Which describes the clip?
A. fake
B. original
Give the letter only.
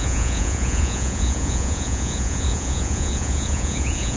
A